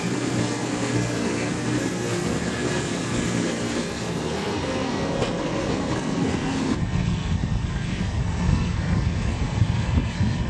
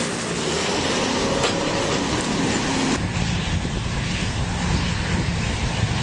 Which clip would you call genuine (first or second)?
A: second